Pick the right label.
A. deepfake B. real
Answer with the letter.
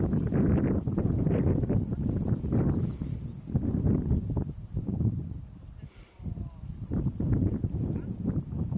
A